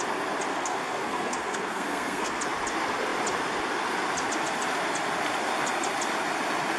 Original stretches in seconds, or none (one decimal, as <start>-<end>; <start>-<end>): 0.0-0.5; 2.4-6.8

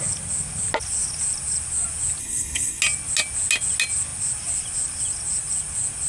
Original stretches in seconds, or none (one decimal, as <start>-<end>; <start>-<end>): 0.0-2.2; 2.8-6.1